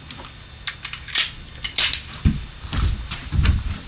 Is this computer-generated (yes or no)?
no